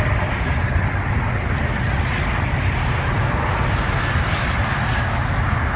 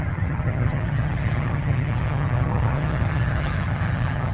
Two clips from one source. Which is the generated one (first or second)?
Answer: second